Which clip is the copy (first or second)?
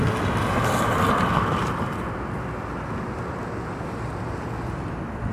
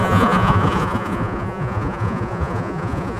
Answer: second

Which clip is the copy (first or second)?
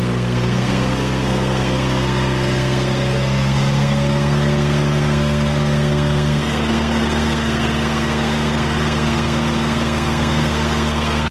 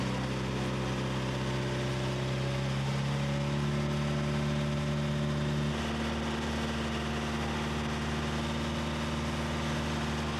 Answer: first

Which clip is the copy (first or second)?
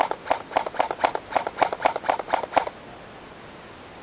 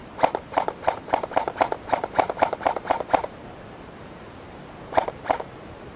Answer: second